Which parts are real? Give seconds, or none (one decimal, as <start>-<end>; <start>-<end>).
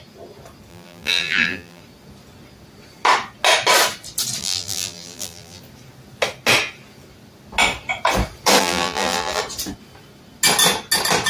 0.0-0.7; 1.8-4.4; 5.6-8.6; 9.4-11.3